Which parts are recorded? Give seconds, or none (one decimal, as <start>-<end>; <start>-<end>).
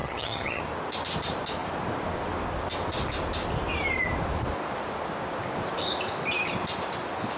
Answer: 0.6-7.4